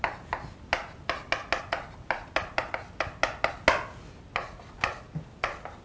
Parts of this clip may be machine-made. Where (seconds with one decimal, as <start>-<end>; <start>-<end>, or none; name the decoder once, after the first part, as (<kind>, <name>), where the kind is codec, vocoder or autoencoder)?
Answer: none